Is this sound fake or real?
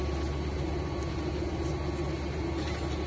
real